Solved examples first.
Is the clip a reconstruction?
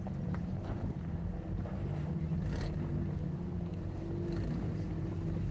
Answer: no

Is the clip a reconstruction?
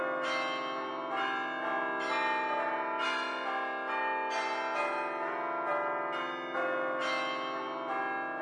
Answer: no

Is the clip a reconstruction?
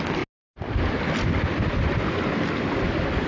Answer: no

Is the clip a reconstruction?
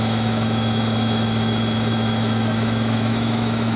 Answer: yes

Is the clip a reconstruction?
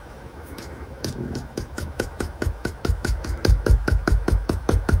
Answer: yes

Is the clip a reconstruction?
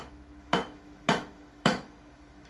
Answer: yes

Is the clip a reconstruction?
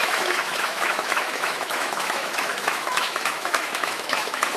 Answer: yes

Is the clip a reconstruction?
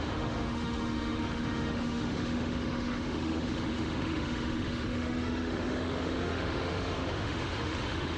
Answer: yes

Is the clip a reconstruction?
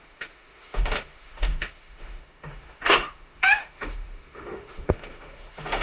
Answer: yes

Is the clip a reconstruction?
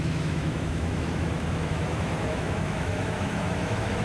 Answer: yes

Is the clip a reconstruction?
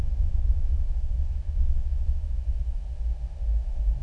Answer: yes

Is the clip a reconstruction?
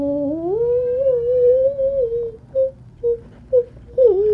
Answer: no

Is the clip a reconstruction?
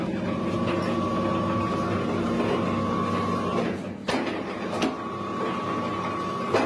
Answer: no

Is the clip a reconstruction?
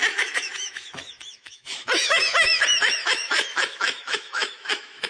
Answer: yes